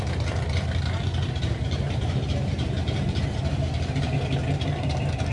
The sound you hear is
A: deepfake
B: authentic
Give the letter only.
A